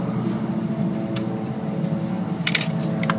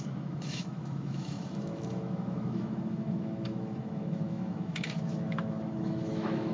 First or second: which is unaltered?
first